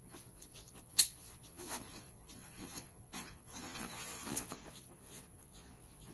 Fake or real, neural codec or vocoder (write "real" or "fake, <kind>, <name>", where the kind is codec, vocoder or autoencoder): fake, vocoder, Vocos